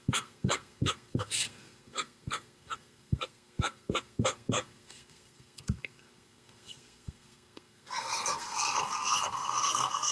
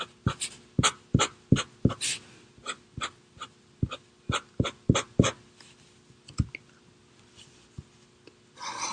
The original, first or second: second